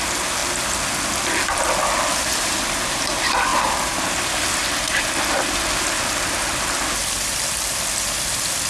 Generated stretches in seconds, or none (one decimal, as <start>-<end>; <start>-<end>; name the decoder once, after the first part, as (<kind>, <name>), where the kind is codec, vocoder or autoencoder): 3.5-5.1 (vocoder, BigVGAN v2)